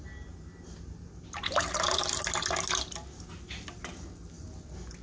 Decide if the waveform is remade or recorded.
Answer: recorded